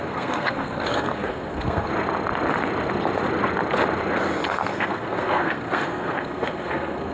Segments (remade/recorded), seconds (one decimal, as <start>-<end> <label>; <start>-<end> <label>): 0.0-1.9 remade; 1.9-4.5 recorded; 4.5-7.1 remade